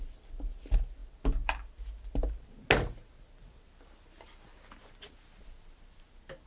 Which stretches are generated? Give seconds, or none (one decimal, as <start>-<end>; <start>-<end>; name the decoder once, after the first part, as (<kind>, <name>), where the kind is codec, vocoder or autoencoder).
none